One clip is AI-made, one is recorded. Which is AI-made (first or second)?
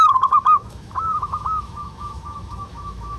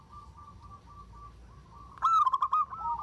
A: first